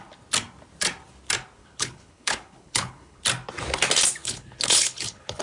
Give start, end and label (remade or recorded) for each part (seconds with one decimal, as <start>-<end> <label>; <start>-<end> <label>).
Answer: 0.0-1.6 recorded; 1.6-3.2 remade; 3.2-4.2 recorded; 4.2-5.4 remade